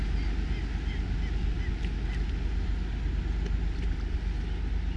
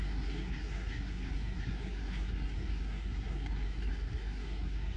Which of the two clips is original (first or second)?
first